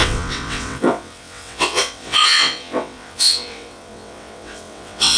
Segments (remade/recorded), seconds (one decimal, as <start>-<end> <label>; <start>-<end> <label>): 0.0-5.2 remade